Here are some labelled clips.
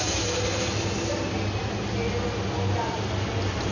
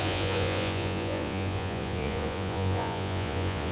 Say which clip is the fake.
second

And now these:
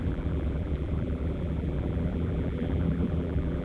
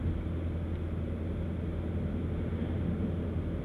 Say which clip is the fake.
first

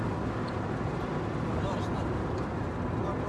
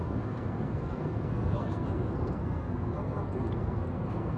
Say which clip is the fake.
second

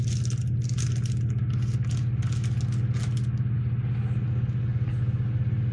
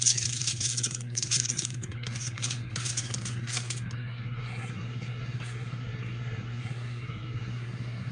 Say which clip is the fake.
second